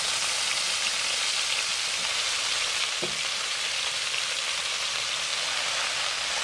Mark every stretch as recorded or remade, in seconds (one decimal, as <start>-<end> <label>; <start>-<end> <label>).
0.0-5.3 remade; 5.3-5.9 recorded; 5.9-6.4 remade